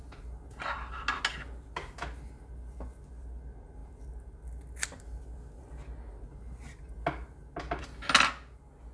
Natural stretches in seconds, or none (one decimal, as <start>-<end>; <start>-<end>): 0.0-8.9